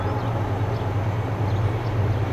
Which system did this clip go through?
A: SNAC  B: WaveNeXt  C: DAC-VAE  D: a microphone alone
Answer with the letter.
D